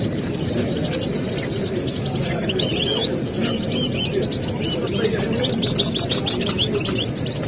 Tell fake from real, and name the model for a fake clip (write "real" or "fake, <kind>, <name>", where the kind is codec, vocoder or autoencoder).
real